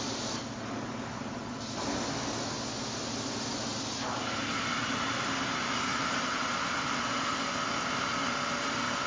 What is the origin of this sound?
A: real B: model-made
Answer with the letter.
A